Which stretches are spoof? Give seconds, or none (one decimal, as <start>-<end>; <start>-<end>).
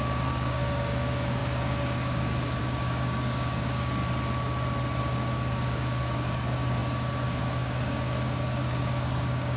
0.0-4.0; 5.0-9.6